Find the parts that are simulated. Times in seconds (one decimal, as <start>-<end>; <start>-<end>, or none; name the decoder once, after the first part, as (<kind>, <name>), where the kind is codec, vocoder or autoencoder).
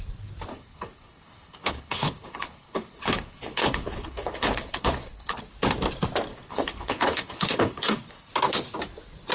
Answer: 0.5-5.4 (codec, HILCodec); 6.3-8.3